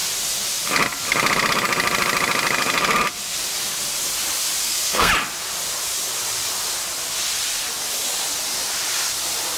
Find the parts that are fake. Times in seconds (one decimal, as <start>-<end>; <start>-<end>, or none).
4.6-5.1